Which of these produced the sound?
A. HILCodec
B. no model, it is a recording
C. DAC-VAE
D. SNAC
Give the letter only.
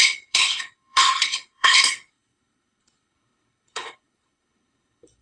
A